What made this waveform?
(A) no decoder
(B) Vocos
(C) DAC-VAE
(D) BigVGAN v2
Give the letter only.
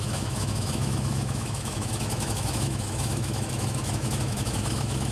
C